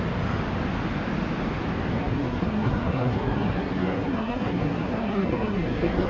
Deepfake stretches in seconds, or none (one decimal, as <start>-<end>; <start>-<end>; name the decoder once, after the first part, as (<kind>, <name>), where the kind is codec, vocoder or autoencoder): 2.0-6.1 (codec, SNAC)